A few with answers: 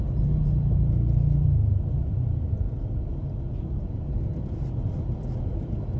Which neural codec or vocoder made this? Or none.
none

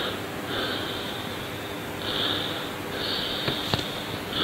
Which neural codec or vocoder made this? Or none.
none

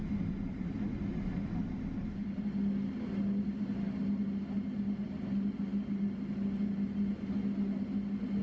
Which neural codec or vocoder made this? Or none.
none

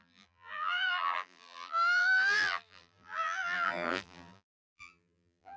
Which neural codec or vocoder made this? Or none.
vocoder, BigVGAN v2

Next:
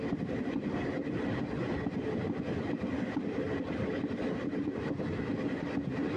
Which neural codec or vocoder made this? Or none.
none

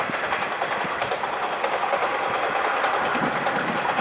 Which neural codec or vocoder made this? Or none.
none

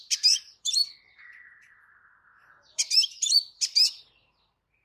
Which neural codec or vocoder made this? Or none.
vocoder, BigVGAN v2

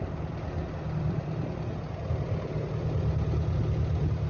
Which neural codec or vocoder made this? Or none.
none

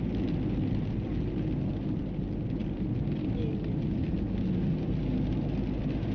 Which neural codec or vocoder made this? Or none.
none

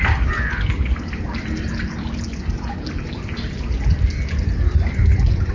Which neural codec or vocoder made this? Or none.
none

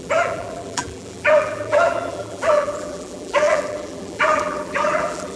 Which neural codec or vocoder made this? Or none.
vocoder, BigVGAN v2